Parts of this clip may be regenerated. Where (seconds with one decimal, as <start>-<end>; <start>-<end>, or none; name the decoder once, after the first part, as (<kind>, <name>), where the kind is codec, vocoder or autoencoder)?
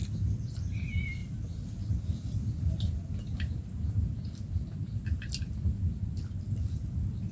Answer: none